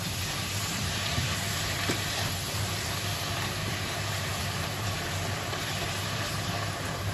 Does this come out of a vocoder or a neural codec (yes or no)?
yes